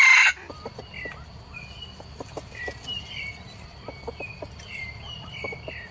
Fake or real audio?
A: real